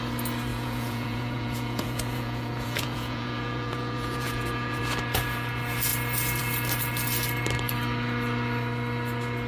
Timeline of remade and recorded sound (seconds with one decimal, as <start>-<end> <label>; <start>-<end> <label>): 0.0-0.5 recorded; 0.5-4.8 remade; 4.8-9.5 recorded